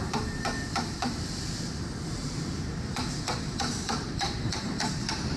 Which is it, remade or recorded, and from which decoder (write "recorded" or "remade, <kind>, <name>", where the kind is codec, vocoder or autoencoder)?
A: remade, vocoder, BigVGAN v2